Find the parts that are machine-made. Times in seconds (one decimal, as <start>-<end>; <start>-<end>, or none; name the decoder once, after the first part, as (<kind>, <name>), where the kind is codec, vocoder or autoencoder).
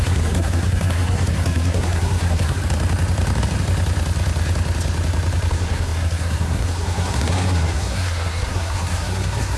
0.0-2.6 (codec, SNAC); 5.5-9.6